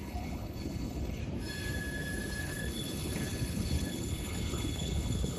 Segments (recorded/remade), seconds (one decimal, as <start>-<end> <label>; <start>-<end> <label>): 0.0-1.2 remade; 1.2-2.4 recorded; 2.4-5.4 remade